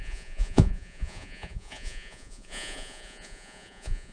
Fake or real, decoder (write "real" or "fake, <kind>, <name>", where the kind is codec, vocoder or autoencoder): fake, vocoder, Vocos